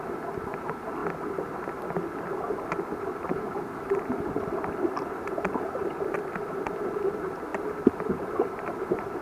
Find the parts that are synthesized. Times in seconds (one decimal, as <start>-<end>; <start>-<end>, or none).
3.3-4.4; 7.5-9.2